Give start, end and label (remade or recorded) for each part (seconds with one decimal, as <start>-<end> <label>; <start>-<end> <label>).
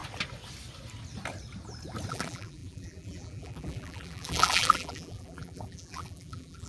0.0-2.1 recorded; 2.1-6.7 remade